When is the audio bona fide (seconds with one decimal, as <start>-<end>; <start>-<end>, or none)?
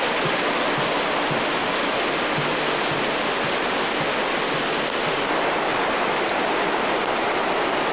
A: 0.0-5.7; 6.9-7.9